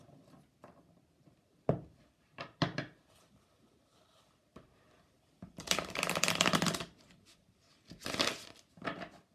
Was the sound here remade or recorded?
recorded